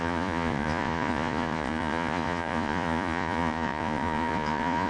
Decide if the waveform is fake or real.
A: fake